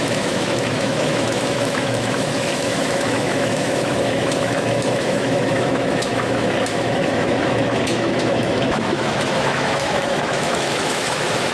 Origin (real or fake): fake